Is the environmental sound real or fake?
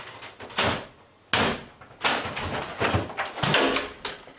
real